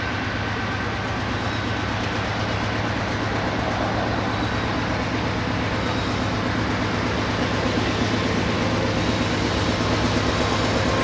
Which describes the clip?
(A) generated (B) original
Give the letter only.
B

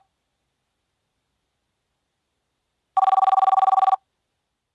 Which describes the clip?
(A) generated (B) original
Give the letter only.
B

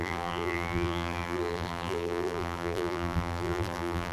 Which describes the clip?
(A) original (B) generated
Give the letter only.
B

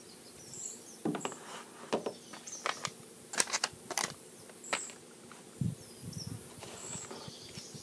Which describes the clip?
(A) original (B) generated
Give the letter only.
A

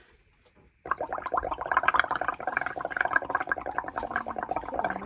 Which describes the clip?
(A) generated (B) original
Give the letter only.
B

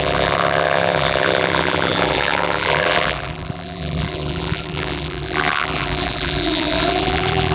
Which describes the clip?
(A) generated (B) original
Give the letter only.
A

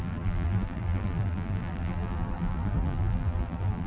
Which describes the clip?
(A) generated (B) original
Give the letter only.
A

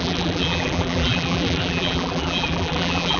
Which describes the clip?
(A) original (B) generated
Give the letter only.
B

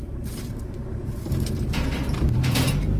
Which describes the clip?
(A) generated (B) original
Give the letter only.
A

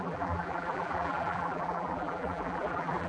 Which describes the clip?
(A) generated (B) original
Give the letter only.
A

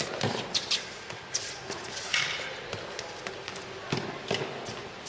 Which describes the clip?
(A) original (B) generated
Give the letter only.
A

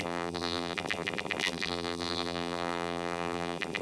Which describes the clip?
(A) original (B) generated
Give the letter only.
B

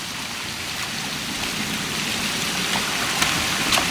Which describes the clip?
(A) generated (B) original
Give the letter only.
B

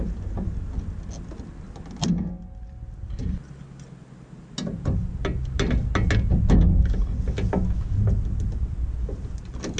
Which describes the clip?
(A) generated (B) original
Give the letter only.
B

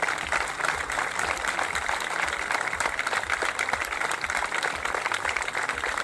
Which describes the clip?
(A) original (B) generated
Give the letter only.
B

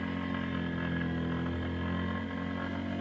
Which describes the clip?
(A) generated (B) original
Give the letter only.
B